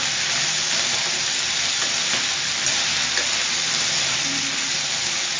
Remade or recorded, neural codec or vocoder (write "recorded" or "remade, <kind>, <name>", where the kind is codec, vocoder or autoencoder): recorded